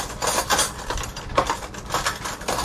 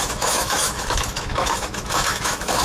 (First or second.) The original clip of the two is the first